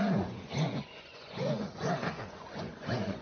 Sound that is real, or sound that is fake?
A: fake